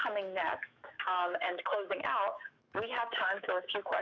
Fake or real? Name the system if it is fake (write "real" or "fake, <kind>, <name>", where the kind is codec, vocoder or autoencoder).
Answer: fake, autoencoder, DAC-VAE